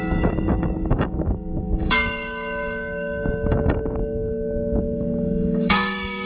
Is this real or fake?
fake